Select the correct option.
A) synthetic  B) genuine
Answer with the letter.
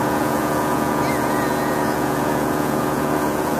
A